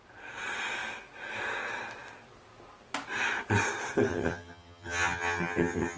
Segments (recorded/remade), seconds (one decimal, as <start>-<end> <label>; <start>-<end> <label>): 0.0-4.1 recorded; 4.1-6.0 remade